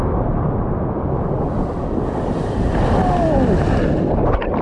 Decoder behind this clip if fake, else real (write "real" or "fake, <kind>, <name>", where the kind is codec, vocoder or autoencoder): real